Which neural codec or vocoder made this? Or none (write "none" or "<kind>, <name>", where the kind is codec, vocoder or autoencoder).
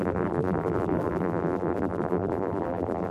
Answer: vocoder, BigVGAN v2